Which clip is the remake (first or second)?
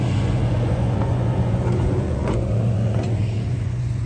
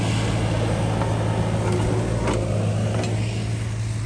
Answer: first